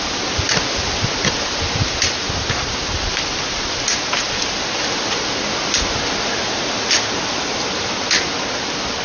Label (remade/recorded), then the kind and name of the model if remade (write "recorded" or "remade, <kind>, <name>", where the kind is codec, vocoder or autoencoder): recorded